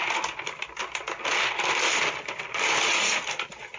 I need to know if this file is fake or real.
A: real